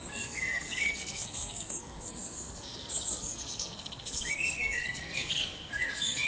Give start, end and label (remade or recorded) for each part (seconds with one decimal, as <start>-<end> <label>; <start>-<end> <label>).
0.0-6.3 remade